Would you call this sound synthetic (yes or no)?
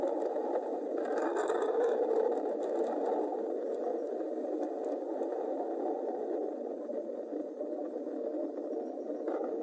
no